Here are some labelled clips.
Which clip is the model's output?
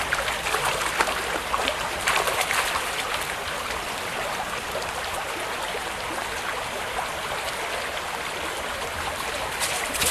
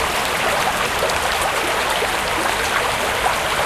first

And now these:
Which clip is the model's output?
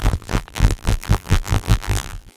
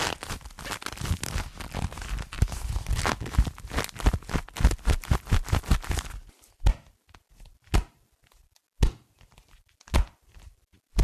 first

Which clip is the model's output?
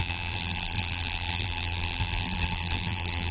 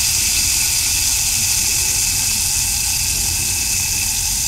first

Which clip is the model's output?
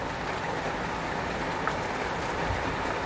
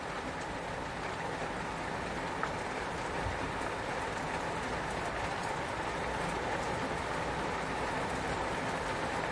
second